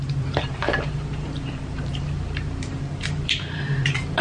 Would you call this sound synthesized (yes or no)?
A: yes